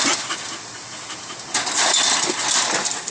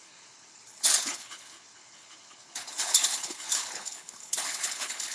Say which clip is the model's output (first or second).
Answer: second